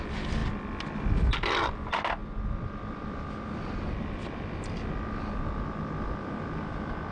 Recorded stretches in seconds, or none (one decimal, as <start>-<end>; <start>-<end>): 0.0-2.2; 4.9-7.1